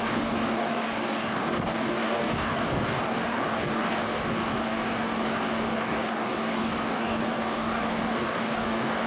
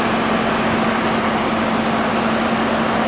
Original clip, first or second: second